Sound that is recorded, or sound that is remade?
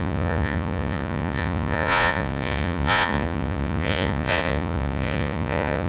remade